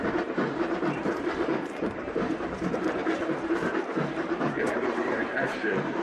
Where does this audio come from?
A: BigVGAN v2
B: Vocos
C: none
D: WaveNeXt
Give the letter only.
A